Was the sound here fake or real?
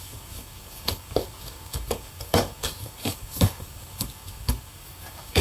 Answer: fake